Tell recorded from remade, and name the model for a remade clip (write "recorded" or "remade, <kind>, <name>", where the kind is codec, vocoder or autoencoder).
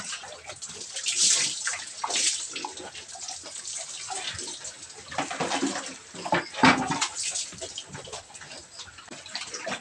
remade, vocoder, BigVGAN v2